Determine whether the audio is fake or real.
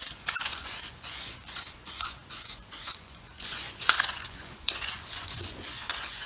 fake